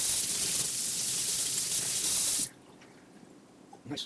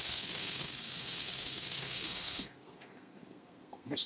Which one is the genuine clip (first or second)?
first